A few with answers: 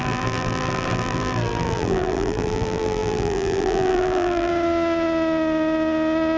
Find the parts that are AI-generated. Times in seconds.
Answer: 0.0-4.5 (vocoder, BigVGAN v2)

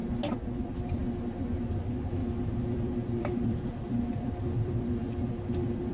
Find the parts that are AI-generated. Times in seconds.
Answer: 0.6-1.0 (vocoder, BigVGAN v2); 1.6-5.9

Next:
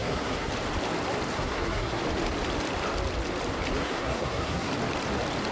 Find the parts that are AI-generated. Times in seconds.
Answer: 0.0-0.5 (codec, SNAC); 1.3-2.0; 3.8-4.7

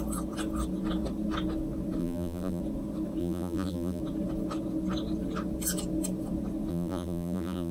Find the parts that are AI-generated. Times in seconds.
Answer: 2.0-2.6 (vocoder, BigVGAN v2); 3.2-4.0; 6.7-7.7